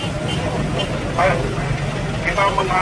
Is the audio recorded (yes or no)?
yes